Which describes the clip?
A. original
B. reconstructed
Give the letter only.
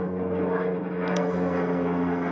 B